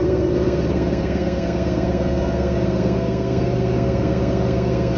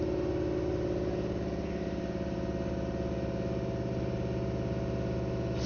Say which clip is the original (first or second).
second